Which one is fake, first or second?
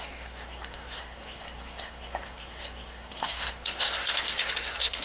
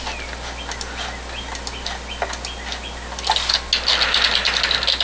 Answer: first